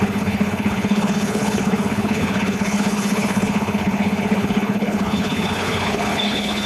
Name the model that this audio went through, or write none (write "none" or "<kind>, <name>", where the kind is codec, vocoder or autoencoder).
codec, HILCodec